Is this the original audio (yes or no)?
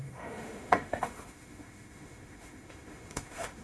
no